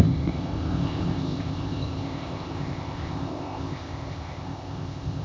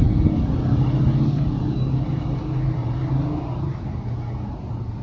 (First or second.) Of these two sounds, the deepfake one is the first